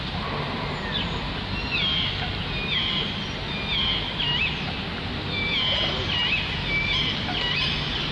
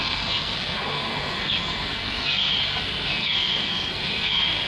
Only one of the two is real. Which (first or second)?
first